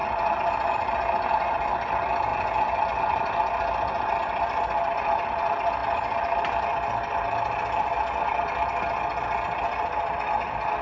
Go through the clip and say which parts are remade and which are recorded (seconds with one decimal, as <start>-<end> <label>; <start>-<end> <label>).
0.0-10.8 recorded